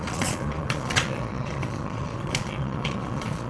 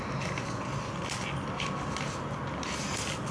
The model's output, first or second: first